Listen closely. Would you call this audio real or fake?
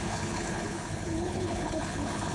fake